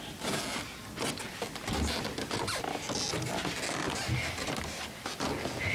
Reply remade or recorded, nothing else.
recorded